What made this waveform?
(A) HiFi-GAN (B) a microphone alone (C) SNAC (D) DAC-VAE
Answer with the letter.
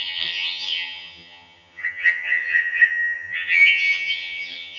A